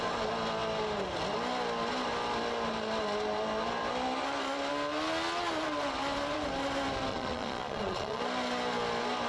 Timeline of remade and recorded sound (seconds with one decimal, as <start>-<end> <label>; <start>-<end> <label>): 0.0-7.1 recorded; 7.1-8.2 remade; 8.2-9.3 recorded